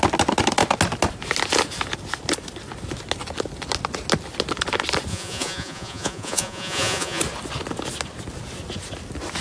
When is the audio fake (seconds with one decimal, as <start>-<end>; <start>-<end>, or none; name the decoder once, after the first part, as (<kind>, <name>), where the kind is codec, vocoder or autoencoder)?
5.1-7.2 (vocoder, Vocos)